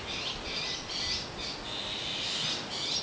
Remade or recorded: recorded